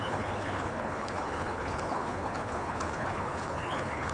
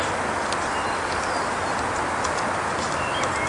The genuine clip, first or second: second